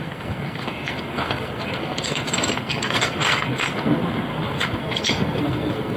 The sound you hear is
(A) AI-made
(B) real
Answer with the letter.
A